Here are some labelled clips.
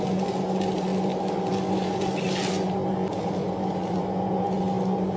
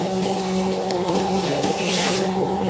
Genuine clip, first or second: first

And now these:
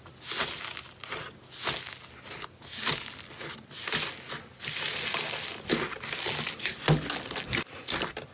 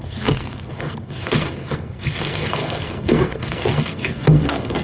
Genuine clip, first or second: first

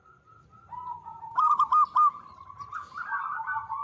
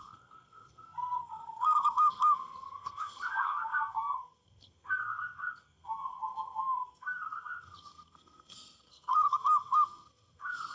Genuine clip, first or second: first